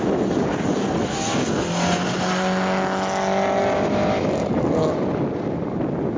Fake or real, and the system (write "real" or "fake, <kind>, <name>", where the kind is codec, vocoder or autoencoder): real